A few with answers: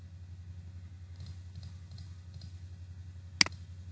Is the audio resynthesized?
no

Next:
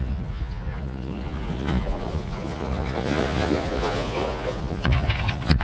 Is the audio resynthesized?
yes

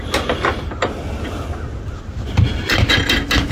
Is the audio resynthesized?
no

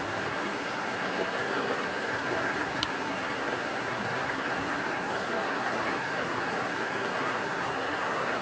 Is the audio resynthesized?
yes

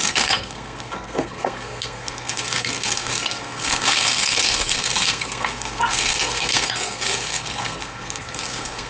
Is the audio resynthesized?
yes